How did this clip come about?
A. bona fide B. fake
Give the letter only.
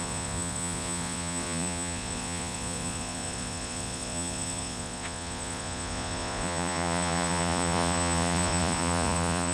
B